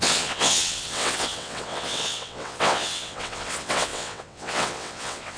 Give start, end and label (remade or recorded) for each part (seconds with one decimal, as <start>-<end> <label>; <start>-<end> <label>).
0.0-5.4 remade